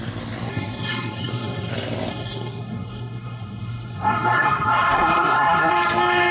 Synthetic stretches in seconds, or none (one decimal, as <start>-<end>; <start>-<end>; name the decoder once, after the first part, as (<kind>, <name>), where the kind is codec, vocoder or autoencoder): 0.5-1.7 (codec, SNAC); 2.1-5.7